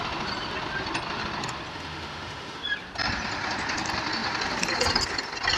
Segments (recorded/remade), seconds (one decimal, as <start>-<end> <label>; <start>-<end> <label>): 0.0-1.7 recorded; 1.7-2.6 remade; 2.6-5.6 recorded